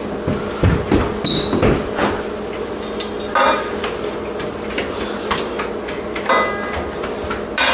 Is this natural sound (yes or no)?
yes